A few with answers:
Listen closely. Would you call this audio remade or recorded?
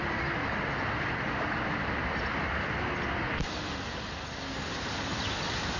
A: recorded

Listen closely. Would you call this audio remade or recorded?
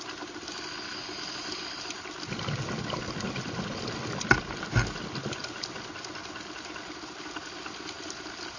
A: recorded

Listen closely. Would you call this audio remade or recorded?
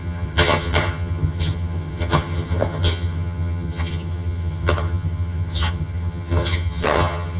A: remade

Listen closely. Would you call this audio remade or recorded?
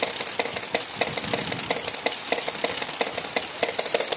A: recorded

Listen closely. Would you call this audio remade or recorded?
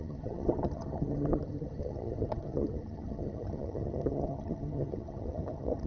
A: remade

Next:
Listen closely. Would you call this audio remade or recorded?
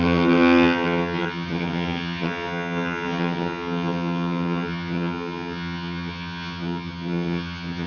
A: remade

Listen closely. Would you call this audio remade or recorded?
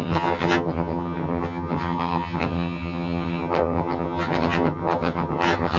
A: remade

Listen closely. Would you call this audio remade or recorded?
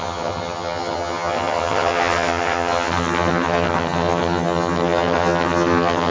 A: remade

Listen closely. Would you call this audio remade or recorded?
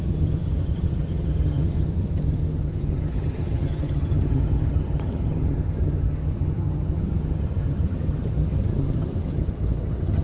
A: remade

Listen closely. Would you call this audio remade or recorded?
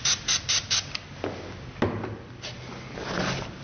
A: recorded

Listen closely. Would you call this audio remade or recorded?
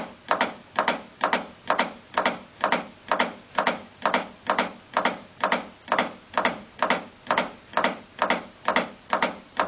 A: recorded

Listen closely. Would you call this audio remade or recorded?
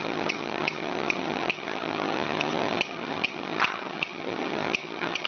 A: remade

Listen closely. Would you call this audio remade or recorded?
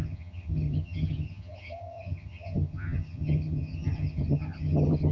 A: remade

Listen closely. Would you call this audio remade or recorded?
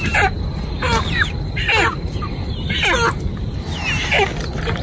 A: recorded